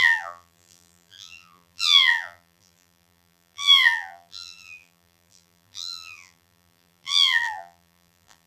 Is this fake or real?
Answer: fake